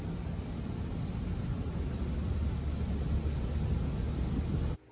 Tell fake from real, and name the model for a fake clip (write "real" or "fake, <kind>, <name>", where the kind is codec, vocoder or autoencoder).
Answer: real